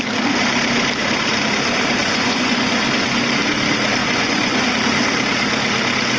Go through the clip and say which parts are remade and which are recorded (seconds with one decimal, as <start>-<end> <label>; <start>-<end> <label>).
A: 0.0-2.0 recorded; 2.0-2.8 remade; 2.8-4.0 recorded; 4.0-4.6 remade; 4.6-6.2 recorded